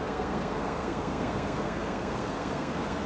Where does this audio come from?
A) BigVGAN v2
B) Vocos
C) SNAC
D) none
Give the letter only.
C